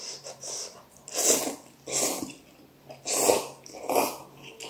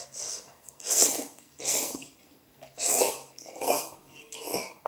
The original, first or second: first